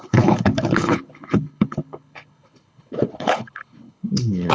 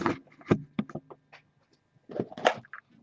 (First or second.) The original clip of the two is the second